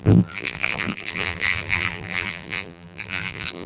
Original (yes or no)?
no